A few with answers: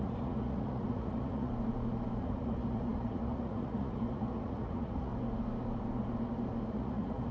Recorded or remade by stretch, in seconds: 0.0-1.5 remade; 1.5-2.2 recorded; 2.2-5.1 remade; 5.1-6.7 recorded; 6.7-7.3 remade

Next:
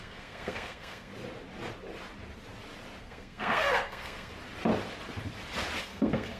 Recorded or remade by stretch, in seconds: 0.0-1.1 remade; 1.1-3.0 recorded; 3.0-4.3 remade; 4.3-5.8 recorded; 5.8-6.4 remade

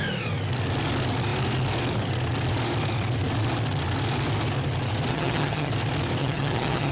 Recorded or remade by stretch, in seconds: 0.0-5.1 recorded; 5.1-5.7 remade; 5.7-6.2 recorded; 6.2-6.9 remade

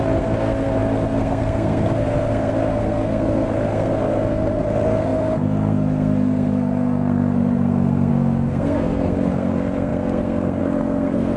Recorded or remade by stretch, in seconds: 0.0-11.4 remade

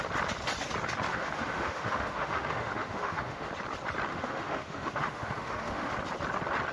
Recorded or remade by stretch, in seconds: 0.0-1.1 recorded; 1.1-3.5 remade; 3.5-4.1 recorded; 4.1-5.9 remade; 5.9-6.7 recorded